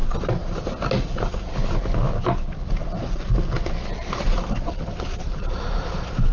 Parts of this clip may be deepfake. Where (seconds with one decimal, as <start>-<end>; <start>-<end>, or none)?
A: 3.9-6.3

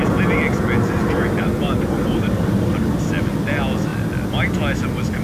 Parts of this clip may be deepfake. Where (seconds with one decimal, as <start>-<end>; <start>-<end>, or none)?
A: 1.0-2.8

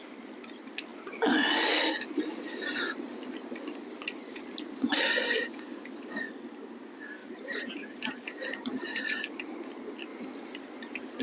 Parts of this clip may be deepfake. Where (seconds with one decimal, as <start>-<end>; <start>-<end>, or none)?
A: 5.7-6.3; 7.2-9.0

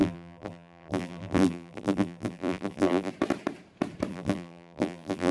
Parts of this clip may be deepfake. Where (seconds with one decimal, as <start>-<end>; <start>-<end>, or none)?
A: 0.0-3.1; 4.1-5.3

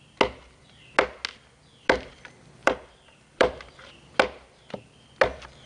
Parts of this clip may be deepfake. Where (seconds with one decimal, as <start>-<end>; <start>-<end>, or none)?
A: 2.6-3.9

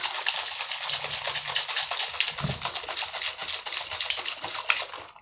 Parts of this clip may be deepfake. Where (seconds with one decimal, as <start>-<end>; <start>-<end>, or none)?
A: none

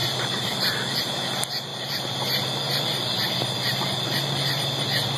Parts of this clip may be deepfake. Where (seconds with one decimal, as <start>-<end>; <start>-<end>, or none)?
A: 0.0-1.0; 1.7-4.8

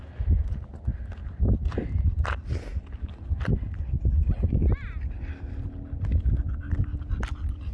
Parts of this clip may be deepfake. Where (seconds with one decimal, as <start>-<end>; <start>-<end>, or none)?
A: none